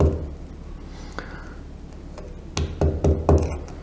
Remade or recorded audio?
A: recorded